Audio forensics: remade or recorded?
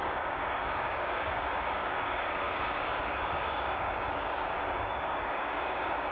remade